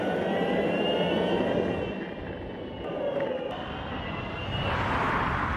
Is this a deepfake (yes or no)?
yes